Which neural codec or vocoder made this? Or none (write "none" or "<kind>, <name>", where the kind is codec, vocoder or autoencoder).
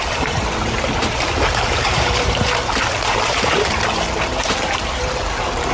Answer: vocoder, BigVGAN v2